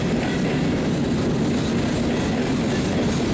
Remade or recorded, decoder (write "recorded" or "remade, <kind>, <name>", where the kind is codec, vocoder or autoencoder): recorded